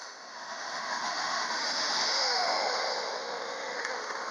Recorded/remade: remade